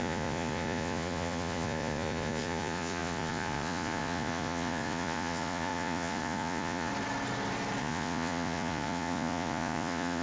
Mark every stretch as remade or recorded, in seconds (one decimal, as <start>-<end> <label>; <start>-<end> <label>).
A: 0.0-6.9 remade; 6.9-7.8 recorded; 7.8-10.2 remade